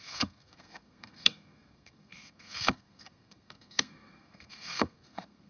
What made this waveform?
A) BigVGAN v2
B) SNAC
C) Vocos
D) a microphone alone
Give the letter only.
B